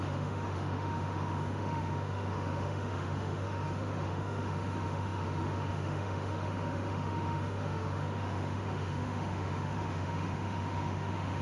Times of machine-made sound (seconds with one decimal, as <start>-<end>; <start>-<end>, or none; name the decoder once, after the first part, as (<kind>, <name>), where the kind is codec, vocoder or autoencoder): 0.0-11.4 (autoencoder, DAC-VAE)